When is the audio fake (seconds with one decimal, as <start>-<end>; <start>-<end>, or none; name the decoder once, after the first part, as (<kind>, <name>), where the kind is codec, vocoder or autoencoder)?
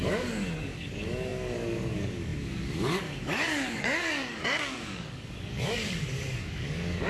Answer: 0.0-7.1 (codec, DAC)